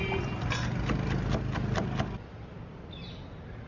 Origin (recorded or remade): recorded